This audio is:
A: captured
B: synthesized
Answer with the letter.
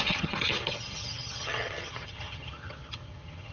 B